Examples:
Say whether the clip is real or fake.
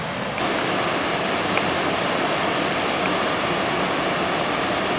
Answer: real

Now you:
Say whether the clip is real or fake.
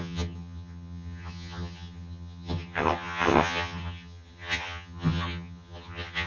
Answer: fake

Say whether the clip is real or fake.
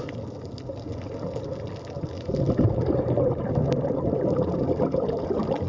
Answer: real